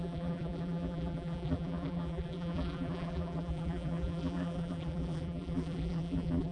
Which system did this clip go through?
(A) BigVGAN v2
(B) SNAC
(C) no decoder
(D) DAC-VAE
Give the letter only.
A